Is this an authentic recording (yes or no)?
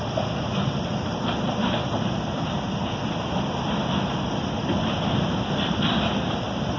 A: yes